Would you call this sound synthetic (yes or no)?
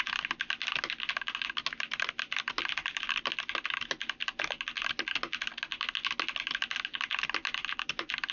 no